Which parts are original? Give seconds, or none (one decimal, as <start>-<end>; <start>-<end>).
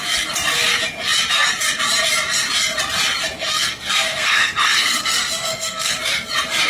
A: 0.0-3.5; 6.0-6.7